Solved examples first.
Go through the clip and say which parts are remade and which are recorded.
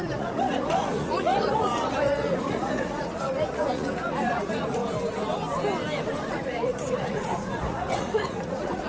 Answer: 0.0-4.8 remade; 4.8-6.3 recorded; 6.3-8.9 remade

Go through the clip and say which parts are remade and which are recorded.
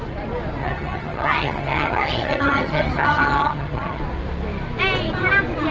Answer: 0.0-0.6 recorded; 0.6-4.0 remade; 4.0-5.7 recorded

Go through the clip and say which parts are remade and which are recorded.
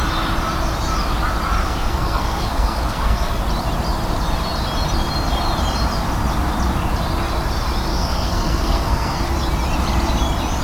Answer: 0.0-1.6 recorded; 1.6-3.4 remade; 3.4-7.9 recorded; 7.9-9.2 remade; 9.2-10.6 recorded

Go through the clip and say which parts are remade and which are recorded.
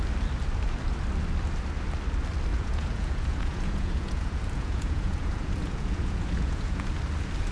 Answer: 0.0-2.5 recorded; 2.5-7.0 remade; 7.0-7.5 recorded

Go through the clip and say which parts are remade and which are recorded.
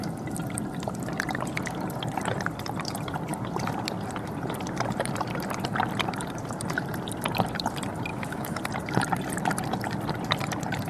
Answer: 0.0-8.1 recorded; 8.1-8.6 remade; 8.6-10.9 recorded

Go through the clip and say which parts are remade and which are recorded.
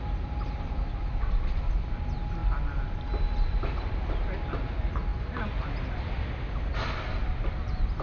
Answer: 0.0-8.0 recorded